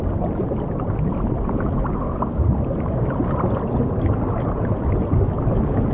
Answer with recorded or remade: recorded